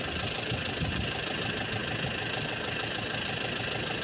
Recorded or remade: recorded